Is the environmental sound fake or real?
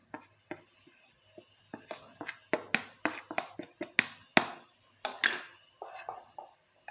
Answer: real